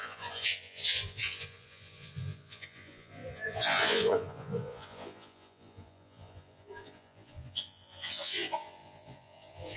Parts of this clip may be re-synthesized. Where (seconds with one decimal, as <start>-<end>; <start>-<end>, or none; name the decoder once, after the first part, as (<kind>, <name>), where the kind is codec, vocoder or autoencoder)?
0.0-9.8 (vocoder, Vocos)